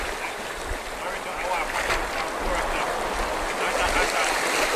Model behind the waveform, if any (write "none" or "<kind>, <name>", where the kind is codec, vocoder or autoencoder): none